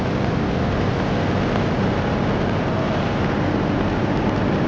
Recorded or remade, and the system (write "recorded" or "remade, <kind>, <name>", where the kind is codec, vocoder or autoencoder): recorded